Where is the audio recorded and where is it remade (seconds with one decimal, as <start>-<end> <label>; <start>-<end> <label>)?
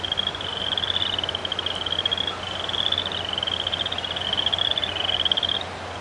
0.0-6.0 recorded